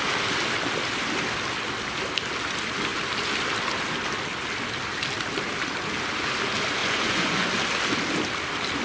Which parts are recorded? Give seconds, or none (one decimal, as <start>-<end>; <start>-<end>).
0.0-6.8; 7.5-8.8